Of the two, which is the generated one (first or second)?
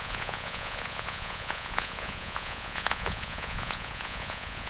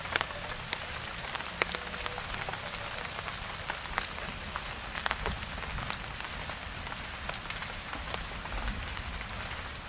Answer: first